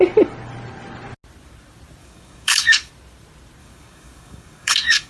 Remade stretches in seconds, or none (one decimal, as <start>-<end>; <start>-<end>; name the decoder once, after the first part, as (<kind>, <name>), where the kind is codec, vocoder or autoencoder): 2.0-2.9 (codec, DAC); 3.6-5.1